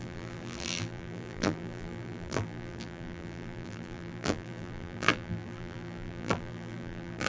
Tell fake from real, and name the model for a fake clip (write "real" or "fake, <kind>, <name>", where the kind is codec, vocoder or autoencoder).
fake, vocoder, BigVGAN v2